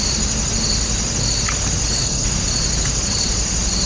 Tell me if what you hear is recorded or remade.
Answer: recorded